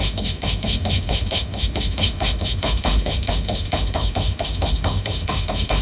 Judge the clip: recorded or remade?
remade